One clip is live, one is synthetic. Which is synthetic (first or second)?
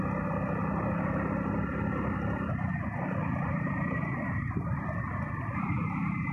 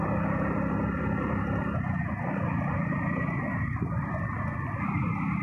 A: first